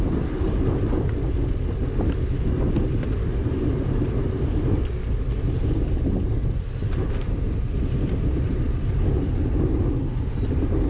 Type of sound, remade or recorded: recorded